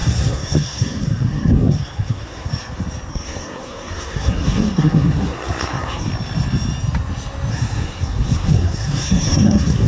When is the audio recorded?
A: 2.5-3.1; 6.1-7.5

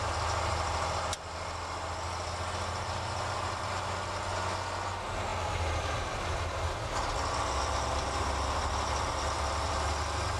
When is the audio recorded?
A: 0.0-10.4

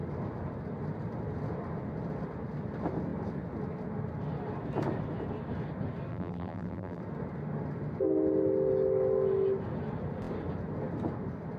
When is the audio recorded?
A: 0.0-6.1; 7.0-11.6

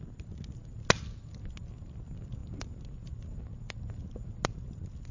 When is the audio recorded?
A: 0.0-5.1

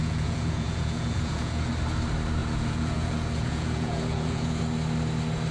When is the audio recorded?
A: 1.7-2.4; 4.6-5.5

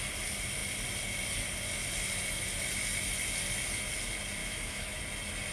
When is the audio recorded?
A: 0.0-4.4; 5.0-5.5